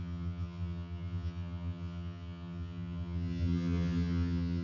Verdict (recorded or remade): remade